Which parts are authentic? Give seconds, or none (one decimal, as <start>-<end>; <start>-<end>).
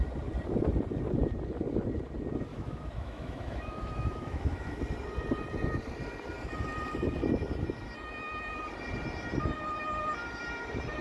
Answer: 0.0-2.5; 4.8-11.0